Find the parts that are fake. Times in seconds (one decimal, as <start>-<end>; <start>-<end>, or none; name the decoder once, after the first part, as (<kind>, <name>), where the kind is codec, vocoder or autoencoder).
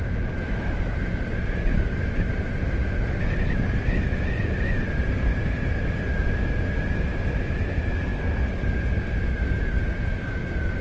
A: none